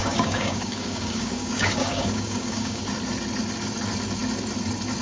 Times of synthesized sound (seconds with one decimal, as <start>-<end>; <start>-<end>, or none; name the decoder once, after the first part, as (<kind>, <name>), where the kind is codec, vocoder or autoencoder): 0.0-2.8 (codec, DAC)